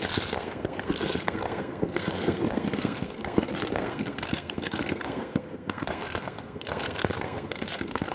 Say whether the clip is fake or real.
fake